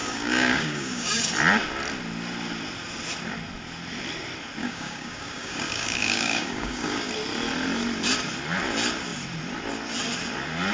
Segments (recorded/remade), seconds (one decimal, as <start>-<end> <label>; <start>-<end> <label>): 0.0-1.3 remade; 1.3-4.6 recorded; 4.6-7.1 remade; 7.1-10.7 recorded